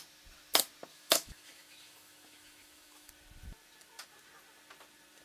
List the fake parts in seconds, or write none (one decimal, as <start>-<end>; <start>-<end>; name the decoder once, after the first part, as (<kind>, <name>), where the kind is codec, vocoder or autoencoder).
0.9-3.1 (autoencoder, DAC-VAE)